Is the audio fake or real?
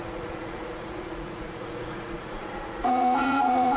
fake